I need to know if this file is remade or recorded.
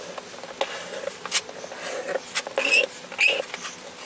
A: recorded